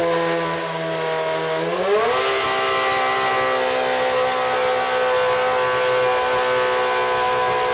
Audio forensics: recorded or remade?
recorded